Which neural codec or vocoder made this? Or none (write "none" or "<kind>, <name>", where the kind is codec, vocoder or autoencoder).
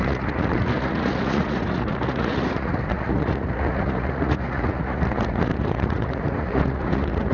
vocoder, Vocos